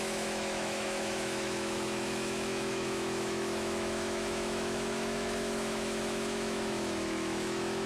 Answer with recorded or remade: remade